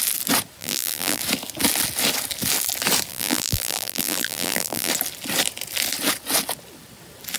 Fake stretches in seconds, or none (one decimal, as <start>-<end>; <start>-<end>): 0.6-1.2; 3.1-4.9